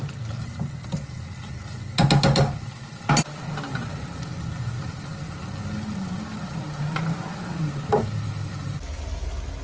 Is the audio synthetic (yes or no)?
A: no